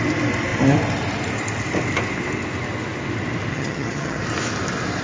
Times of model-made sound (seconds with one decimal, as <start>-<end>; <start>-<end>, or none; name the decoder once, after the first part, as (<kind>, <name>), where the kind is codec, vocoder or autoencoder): 3.5-4.2 (vocoder, HiFi-GAN)